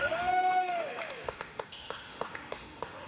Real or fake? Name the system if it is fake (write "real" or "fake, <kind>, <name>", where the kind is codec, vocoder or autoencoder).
fake, autoencoder, DAC-VAE